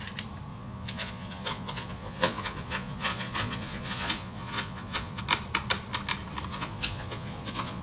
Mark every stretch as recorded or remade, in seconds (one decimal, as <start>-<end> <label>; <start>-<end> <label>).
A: 0.0-0.5 recorded; 0.5-5.2 remade; 5.2-6.5 recorded; 6.5-7.8 remade